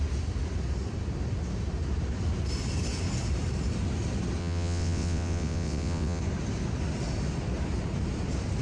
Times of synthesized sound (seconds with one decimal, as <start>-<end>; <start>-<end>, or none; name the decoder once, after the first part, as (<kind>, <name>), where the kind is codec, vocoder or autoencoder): 4.4-6.2 (vocoder, WaveNeXt)